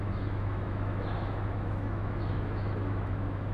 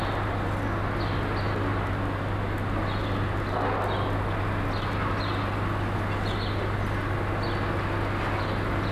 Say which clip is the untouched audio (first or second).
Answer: second